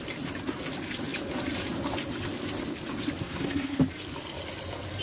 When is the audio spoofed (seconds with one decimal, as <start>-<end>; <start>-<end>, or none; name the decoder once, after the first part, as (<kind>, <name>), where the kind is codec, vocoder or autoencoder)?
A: 3.2-3.8 (codec, SNAC)